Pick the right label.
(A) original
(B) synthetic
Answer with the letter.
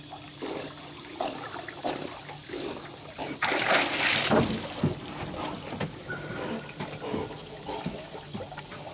A